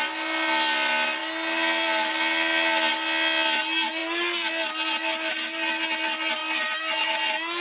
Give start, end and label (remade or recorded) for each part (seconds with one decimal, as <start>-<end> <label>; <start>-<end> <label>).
0.0-7.6 recorded